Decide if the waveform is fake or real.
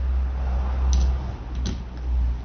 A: real